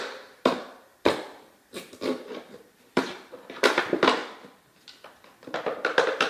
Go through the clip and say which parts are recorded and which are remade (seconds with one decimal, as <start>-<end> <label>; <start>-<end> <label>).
0.0-0.9 recorded; 0.9-3.8 remade; 3.8-4.2 recorded; 4.2-4.8 remade; 4.8-6.3 recorded